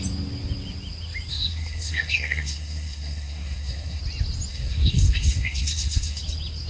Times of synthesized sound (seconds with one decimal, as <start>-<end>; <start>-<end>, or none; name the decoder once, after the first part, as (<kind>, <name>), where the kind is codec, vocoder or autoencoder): 1.3-4.0 (codec, SNAC); 4.5-6.2